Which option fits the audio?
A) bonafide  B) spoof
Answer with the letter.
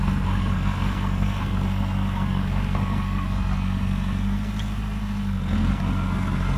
B